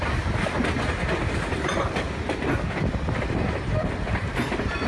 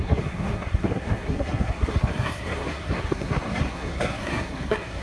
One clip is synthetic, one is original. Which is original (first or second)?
first